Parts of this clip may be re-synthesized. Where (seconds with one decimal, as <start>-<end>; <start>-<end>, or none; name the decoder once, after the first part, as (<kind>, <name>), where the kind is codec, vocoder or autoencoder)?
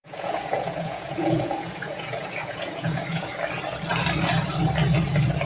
0.0-3.3 (vocoder, Vocos)